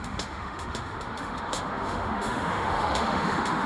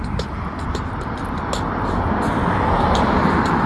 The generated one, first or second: first